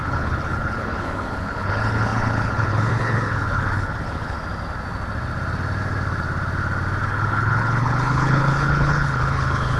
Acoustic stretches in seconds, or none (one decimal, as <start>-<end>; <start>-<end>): 4.4-7.0